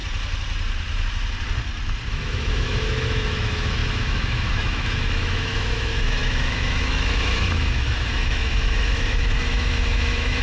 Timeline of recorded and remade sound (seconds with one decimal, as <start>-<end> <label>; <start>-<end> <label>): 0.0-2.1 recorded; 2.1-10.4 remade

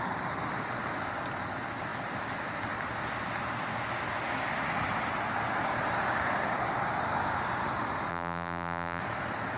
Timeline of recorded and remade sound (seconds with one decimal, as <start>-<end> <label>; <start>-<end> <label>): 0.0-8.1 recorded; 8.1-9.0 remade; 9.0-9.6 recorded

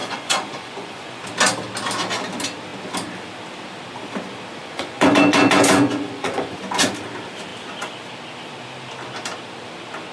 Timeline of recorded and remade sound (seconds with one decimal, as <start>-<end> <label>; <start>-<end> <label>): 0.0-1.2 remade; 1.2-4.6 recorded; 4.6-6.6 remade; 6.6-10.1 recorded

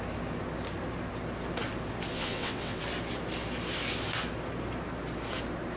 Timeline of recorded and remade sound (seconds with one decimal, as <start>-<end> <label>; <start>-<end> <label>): 0.0-2.1 recorded; 2.1-2.8 remade; 2.8-5.8 recorded

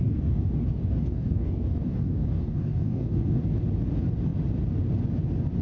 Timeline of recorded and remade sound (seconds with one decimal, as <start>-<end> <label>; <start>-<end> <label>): 0.0-3.4 remade; 3.4-5.6 recorded